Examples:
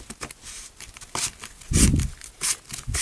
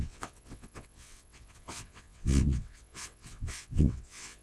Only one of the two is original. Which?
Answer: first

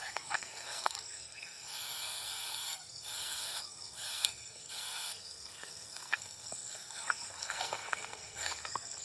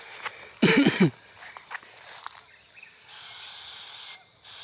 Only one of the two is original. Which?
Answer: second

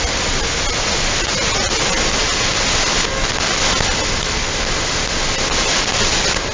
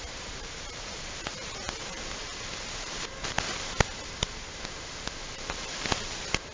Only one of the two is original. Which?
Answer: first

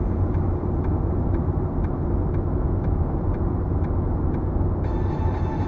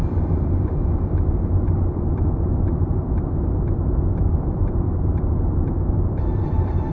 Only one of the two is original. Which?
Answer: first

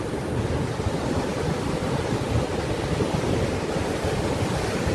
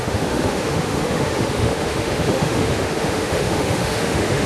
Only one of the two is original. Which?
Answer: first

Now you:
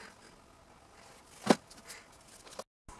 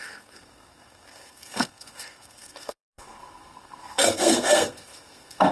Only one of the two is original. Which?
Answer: first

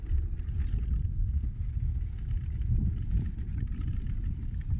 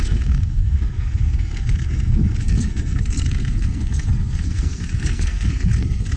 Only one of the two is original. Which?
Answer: first